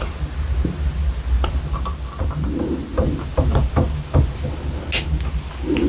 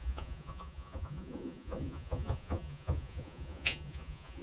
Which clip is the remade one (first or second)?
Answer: second